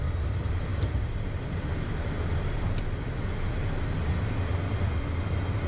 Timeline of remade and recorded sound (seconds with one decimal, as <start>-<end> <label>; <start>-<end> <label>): 0.0-0.7 recorded; 0.7-4.1 remade; 4.1-5.7 recorded